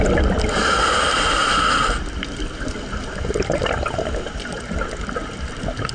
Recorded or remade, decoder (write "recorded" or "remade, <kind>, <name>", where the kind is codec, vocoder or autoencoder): recorded